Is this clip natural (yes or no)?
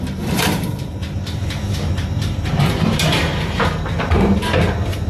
no